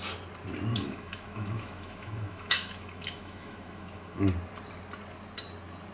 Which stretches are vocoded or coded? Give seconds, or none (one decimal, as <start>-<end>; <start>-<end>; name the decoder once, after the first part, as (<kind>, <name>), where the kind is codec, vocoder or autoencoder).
0.7-4.2 (autoencoder, DAC-VAE)

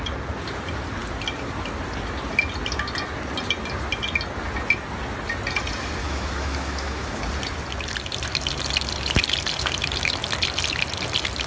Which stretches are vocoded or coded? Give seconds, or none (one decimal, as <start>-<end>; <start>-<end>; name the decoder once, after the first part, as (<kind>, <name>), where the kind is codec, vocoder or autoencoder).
6.0-7.2 (autoencoder, DAC-VAE)

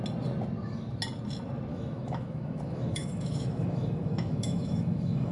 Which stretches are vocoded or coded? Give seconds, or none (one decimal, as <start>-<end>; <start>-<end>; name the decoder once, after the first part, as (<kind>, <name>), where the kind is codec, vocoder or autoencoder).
1.7-5.3 (autoencoder, DAC-VAE)

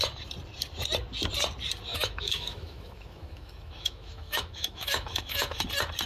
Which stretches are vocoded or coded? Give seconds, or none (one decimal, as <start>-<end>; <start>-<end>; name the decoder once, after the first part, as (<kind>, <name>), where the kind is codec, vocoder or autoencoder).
1.9-5.6 (autoencoder, DAC-VAE)

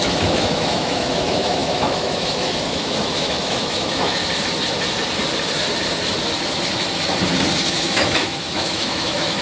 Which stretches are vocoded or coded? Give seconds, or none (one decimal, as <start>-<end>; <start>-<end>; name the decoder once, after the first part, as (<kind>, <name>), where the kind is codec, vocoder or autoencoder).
0.0-4.2 (autoencoder, DAC-VAE); 7.7-9.4

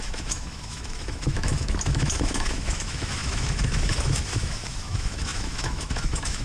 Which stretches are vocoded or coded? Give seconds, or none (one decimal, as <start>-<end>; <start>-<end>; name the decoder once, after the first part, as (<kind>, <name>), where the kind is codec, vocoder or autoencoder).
0.0-6.4 (autoencoder, DAC-VAE)

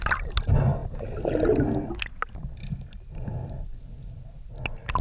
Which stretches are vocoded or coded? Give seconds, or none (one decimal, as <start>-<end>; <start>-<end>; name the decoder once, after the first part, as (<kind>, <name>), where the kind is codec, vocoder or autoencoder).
none